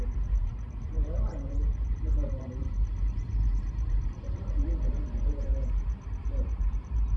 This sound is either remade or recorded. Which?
remade